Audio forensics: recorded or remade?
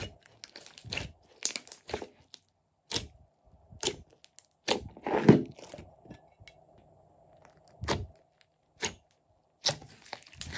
recorded